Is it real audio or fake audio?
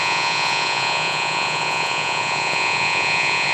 fake